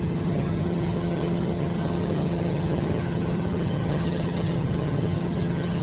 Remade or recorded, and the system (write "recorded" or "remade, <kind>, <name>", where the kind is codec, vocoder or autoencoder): remade, vocoder, HiFi-GAN